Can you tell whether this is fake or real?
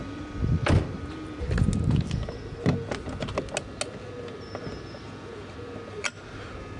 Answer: real